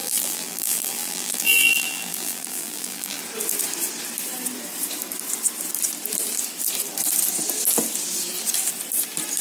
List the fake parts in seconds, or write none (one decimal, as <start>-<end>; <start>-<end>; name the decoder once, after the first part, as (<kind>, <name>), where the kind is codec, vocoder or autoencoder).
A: 0.0-3.2 (vocoder, BigVGAN v2)